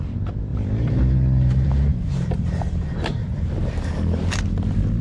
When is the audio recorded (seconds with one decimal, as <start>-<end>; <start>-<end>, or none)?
0.0-0.5; 3.5-5.0